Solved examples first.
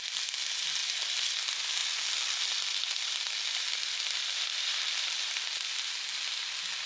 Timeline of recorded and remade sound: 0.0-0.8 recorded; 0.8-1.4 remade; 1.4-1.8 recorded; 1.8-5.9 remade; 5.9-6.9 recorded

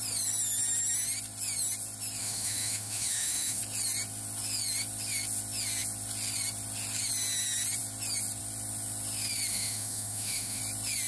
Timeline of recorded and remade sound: 0.0-2.2 recorded; 2.2-3.6 remade; 3.6-9.5 recorded; 9.5-10.6 remade; 10.6-11.1 recorded

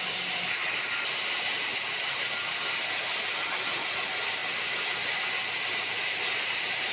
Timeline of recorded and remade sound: 0.0-6.9 recorded

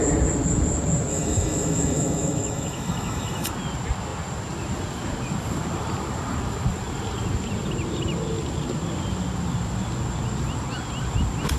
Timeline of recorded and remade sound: 0.0-1.1 recorded; 1.1-3.5 remade; 3.5-11.6 recorded